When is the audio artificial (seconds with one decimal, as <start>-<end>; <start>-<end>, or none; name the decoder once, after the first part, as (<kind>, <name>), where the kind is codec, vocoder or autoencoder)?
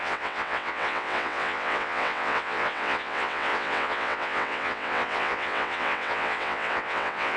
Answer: 0.0-7.4 (vocoder, WaveNeXt)